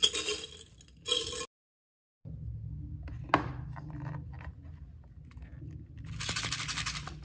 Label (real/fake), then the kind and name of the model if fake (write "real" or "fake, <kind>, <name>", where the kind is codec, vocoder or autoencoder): real